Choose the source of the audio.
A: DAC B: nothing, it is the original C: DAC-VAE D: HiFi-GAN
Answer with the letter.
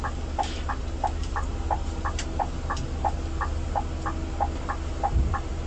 B